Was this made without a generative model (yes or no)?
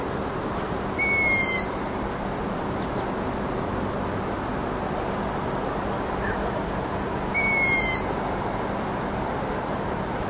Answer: yes